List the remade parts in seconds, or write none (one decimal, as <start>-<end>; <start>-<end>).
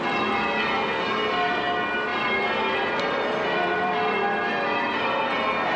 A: 2.1-4.5